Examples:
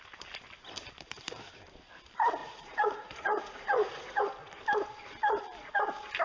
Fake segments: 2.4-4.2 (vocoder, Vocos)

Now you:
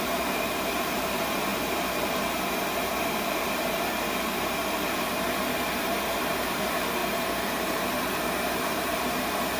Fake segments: 0.0-9.6 (vocoder, BigVGAN v2)

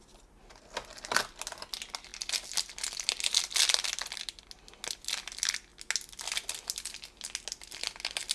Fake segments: none

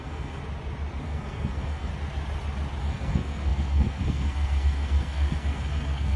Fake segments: 0.0-0.4 (codec, SNAC); 1.0-1.9; 2.8-6.2